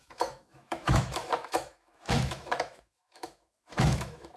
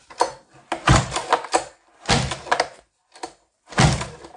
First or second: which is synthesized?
first